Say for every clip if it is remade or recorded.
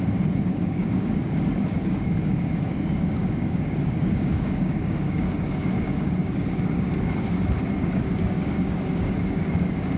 remade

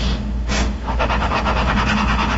remade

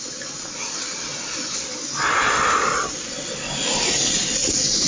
recorded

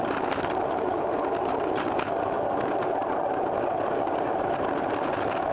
recorded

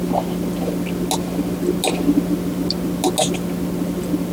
recorded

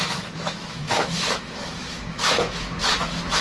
remade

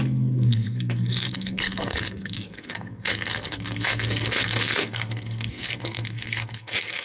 remade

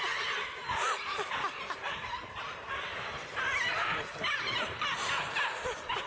remade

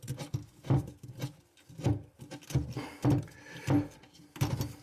recorded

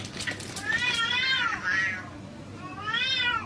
recorded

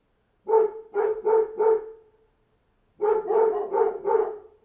recorded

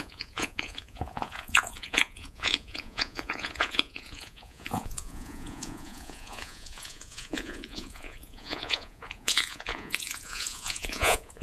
remade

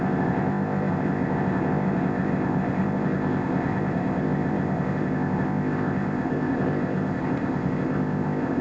remade